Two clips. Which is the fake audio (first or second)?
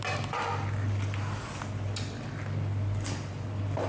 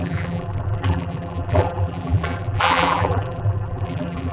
second